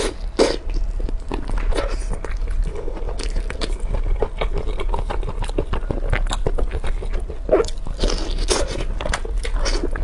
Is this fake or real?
real